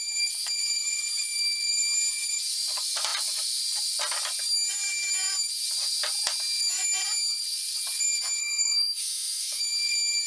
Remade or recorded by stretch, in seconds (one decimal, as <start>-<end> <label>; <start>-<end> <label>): 0.0-8.4 recorded; 8.4-9.6 remade; 9.6-10.3 recorded